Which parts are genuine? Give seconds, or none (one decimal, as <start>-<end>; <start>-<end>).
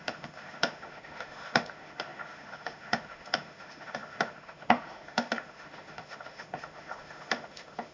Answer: none